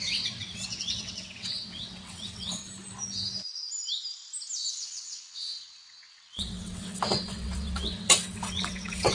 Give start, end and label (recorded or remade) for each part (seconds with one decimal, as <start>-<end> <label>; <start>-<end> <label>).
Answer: 0.0-2.6 remade; 2.6-4.7 recorded; 4.7-9.1 remade